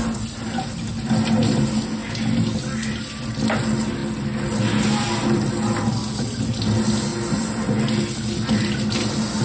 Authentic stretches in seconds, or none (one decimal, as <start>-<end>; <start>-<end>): 0.0-9.4